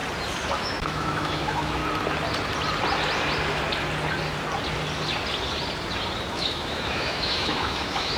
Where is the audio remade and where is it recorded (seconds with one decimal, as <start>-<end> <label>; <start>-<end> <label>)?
0.0-0.6 recorded; 0.6-1.8 remade; 1.8-6.3 recorded; 6.3-8.2 remade